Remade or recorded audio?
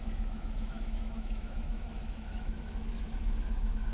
remade